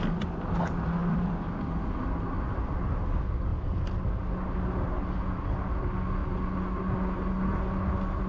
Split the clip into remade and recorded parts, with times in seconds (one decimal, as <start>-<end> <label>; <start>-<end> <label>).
0.0-8.3 recorded